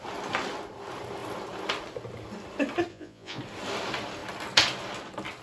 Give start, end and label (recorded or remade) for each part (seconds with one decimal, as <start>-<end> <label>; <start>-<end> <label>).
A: 0.0-2.9 recorded; 2.9-3.4 remade; 3.4-5.4 recorded